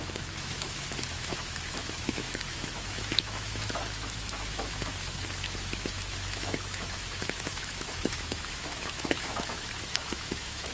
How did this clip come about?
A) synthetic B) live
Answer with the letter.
A